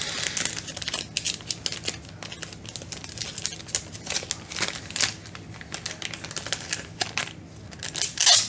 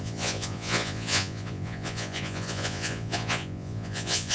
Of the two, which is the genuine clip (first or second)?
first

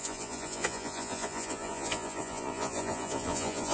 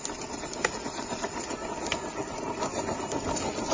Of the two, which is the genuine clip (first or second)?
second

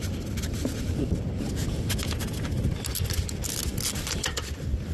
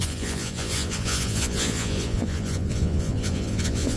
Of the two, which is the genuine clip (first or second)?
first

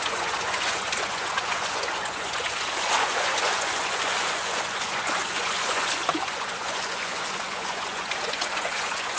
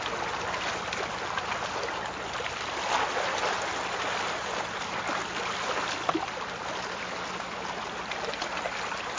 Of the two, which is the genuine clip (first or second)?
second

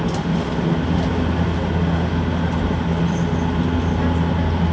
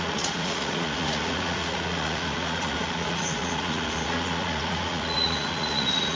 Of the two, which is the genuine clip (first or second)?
first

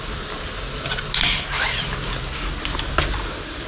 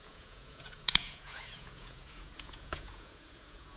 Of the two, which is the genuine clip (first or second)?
first